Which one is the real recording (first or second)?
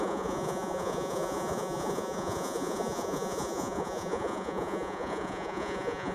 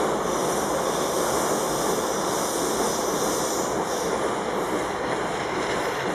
second